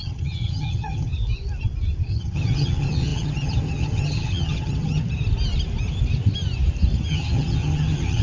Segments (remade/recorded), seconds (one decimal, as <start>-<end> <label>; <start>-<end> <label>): 0.0-1.1 remade; 1.1-2.1 recorded; 2.1-5.0 remade; 5.0-7.1 recorded; 7.1-8.2 remade